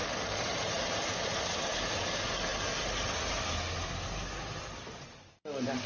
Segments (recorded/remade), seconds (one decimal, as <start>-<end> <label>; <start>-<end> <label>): 0.0-5.9 recorded